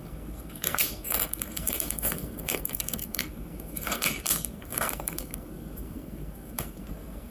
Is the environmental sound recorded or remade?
remade